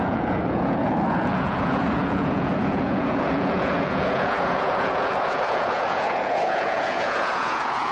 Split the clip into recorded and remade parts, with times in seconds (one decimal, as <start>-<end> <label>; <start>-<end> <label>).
0.0-7.9 remade